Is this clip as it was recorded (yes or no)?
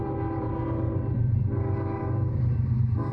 no